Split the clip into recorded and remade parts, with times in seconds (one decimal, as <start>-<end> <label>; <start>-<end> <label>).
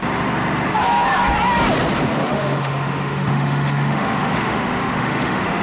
0.0-2.2 recorded; 2.2-5.6 remade